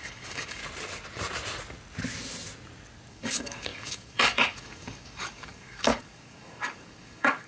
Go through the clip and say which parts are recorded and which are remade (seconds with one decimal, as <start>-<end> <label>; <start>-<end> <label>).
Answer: 0.0-0.6 remade; 0.6-3.1 recorded; 3.1-7.5 remade